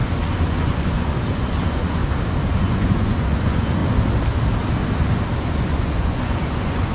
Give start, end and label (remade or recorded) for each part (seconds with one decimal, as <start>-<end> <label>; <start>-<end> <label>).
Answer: 0.0-2.0 remade; 2.0-2.6 recorded; 2.6-3.8 remade; 3.8-5.4 recorded; 5.4-6.9 remade